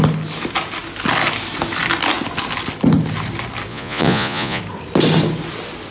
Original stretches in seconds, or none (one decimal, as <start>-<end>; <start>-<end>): 0.0-3.7; 4.6-5.9